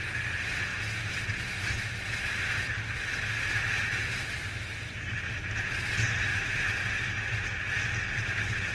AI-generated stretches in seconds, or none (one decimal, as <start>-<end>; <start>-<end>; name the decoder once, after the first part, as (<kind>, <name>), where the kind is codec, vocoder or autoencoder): none

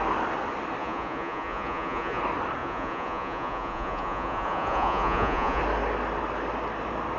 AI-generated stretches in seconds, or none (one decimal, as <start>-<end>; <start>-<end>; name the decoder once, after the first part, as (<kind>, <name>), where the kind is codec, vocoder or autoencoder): 0.8-2.2 (vocoder, Vocos); 2.6-5.6

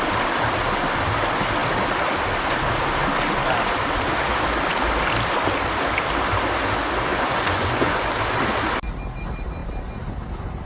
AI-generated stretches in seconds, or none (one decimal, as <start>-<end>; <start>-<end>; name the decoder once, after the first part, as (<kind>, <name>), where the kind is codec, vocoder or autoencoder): 7.1-8.1 (vocoder, Vocos)